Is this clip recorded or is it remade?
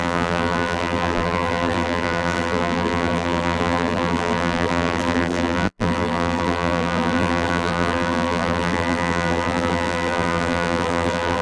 remade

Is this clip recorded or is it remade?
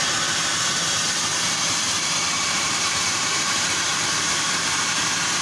remade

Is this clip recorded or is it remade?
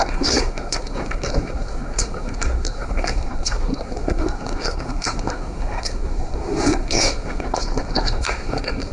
remade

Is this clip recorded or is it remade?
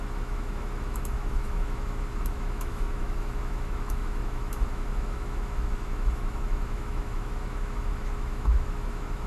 remade